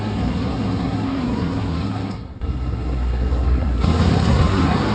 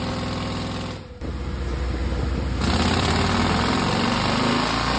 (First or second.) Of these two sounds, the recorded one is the second